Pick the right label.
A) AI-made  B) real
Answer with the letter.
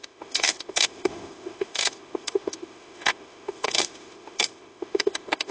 A